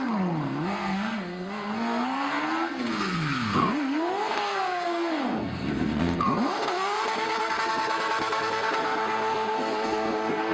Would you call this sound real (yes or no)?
no